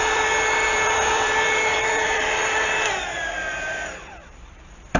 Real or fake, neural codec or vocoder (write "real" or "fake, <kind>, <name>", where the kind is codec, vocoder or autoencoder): fake, vocoder, BigVGAN v2